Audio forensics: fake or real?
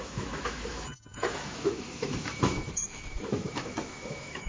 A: fake